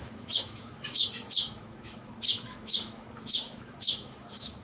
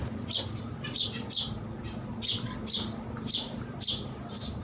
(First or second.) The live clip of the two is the second